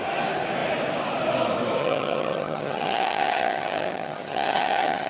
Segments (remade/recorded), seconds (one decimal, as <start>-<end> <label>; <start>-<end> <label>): 0.0-1.8 recorded; 1.8-5.1 remade